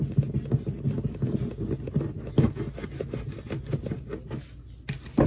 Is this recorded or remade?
recorded